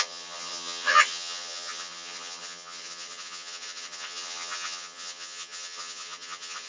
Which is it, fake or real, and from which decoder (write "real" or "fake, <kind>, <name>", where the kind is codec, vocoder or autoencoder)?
fake, vocoder, HiFi-GAN